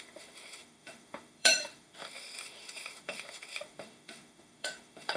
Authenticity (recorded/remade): remade